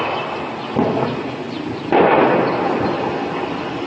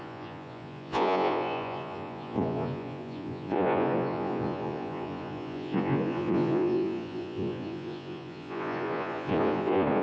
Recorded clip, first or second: first